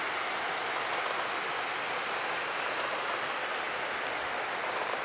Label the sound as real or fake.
real